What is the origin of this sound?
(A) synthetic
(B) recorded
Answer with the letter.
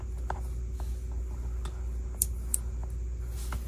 B